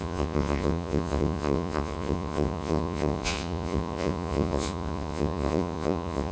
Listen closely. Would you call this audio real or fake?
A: fake